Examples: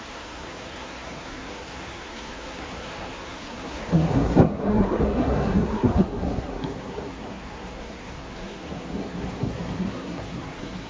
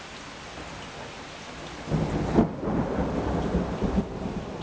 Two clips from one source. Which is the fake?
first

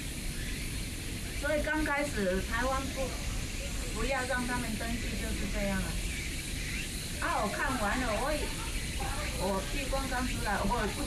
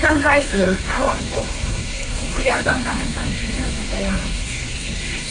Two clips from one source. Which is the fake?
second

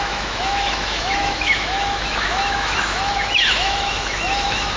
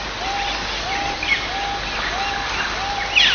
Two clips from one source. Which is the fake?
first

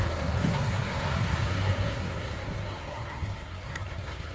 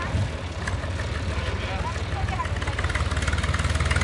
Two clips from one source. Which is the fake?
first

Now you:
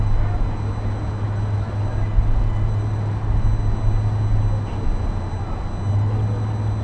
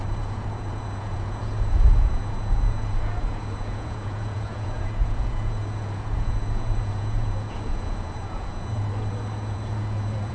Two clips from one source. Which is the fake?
second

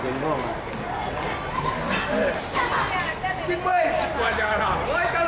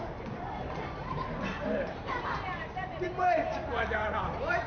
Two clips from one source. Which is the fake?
second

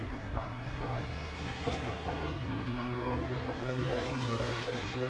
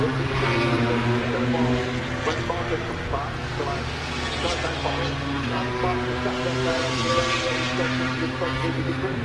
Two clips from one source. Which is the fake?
first